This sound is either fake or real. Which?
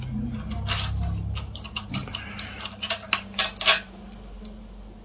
real